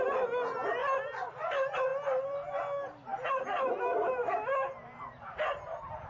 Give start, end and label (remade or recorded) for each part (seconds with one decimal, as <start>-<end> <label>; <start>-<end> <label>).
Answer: 0.0-6.1 recorded